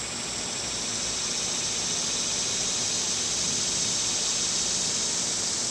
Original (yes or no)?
yes